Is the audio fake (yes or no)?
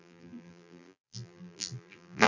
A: yes